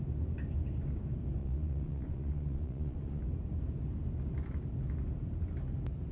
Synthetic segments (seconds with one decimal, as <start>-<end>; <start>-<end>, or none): 1.4-3.2